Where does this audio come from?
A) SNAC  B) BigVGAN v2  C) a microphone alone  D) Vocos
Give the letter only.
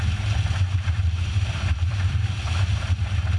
B